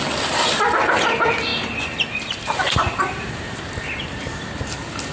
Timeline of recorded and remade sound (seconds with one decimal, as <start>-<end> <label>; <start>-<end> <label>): 0.0-1.5 recorded; 1.5-4.6 remade; 4.6-5.1 recorded